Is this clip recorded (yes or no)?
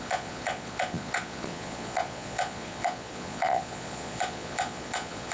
no